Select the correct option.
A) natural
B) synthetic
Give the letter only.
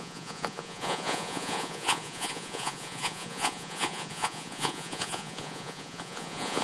B